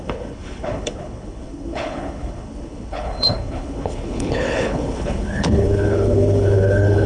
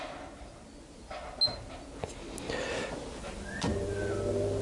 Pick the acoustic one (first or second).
second